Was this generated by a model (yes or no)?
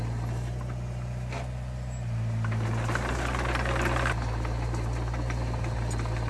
no